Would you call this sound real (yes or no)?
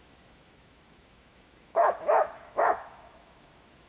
no